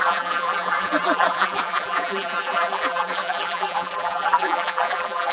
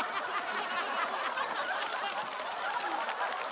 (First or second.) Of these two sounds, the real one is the second